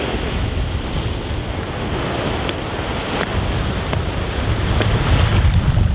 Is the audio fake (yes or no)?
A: no